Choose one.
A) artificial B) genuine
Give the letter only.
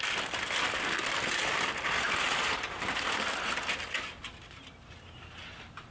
B